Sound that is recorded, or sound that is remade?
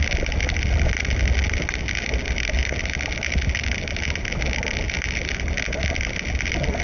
recorded